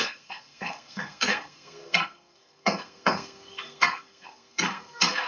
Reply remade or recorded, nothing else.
remade